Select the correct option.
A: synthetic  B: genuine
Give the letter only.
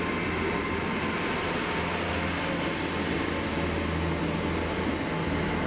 B